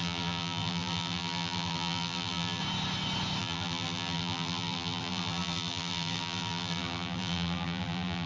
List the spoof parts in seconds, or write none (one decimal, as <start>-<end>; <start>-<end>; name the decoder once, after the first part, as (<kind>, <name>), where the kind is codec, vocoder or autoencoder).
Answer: 0.0-2.6 (vocoder, BigVGAN v2); 3.4-8.3